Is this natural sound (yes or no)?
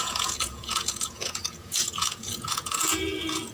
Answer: no